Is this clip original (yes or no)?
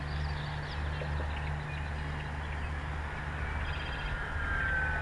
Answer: yes